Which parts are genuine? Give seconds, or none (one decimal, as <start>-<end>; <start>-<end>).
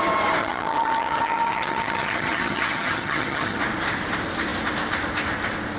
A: 0.0-0.4; 3.6-5.8